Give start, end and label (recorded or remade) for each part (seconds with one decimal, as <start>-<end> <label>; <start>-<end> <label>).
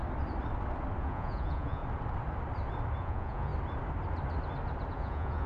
0.0-1.0 recorded; 1.0-1.8 remade; 1.8-3.0 recorded; 3.0-3.5 remade; 3.5-4.9 recorded; 4.9-5.5 remade